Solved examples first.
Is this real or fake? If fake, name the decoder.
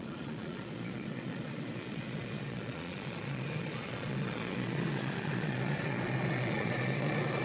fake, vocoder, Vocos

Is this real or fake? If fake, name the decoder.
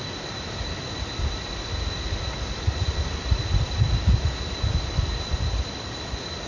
fake, vocoder, BigVGAN v2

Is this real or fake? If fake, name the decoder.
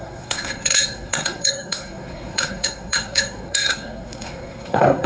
fake, codec, SNAC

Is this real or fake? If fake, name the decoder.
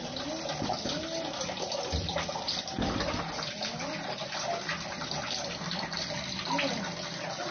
real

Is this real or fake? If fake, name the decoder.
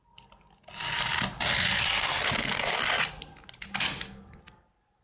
real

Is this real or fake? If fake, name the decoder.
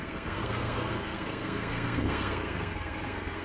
fake, codec, SNAC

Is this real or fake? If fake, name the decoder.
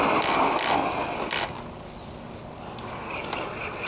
real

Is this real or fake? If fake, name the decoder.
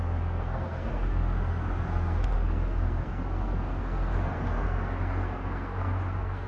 fake, codec, SNAC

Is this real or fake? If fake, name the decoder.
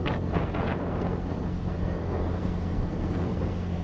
fake, codec, SNAC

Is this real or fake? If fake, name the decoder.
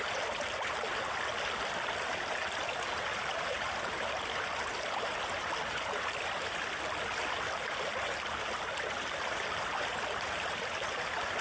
real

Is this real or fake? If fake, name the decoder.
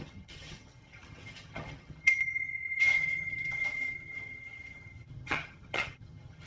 fake, vocoder, HiFi-GAN